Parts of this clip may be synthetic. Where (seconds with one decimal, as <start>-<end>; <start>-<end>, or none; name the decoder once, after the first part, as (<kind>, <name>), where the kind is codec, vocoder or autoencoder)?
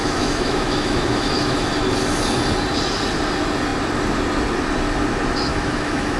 0.0-1.7 (autoencoder, DAC-VAE); 5.5-6.2